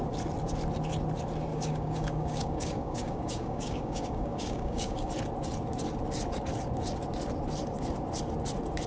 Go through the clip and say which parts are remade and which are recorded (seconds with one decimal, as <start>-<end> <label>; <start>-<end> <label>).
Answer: 0.0-1.5 recorded; 1.5-5.1 remade; 5.1-8.9 recorded